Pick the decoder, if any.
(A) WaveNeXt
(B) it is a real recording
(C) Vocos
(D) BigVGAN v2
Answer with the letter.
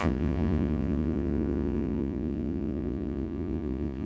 C